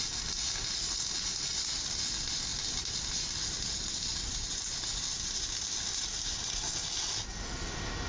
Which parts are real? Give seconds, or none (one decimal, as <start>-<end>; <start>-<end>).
0.0-8.1